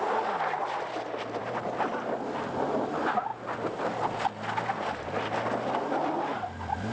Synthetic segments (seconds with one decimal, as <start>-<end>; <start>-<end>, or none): none